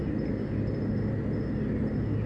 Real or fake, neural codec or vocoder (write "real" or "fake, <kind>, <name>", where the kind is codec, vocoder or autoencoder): real